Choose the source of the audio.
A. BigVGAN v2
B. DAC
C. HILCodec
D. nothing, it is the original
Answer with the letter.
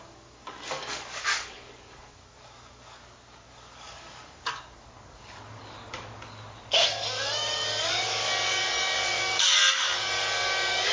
B